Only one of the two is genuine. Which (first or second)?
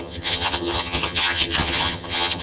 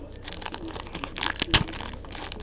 second